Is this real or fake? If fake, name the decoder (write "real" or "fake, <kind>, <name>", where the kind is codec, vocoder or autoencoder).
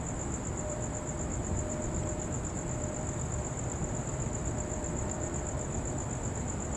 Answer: fake, vocoder, BigVGAN v2